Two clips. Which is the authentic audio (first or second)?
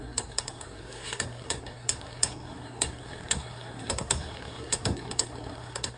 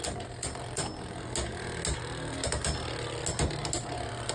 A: second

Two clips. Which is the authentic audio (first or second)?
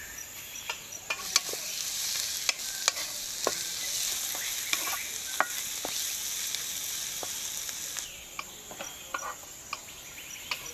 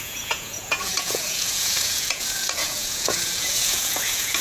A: first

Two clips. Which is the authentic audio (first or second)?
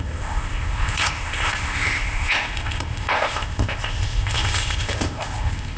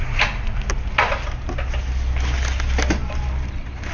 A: second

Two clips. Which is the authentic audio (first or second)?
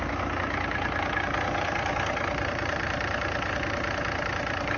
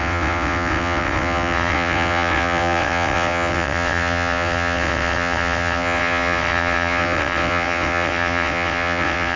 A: first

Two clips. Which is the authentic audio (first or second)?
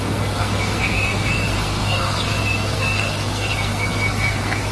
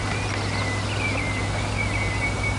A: second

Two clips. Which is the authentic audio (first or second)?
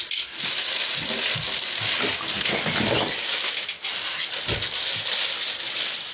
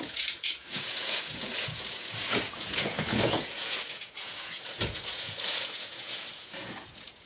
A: first